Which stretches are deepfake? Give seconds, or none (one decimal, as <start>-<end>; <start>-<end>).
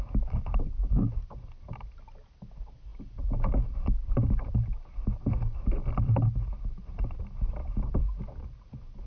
none